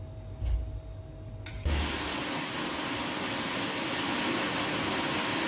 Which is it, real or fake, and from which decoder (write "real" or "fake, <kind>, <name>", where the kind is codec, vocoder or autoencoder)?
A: real